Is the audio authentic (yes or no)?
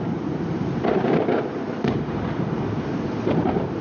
no